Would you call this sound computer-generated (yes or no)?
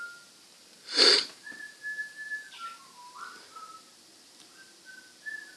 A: no